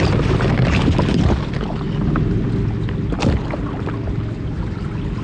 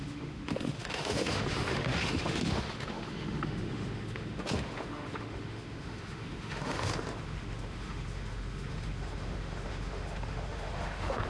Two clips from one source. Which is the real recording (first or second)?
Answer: first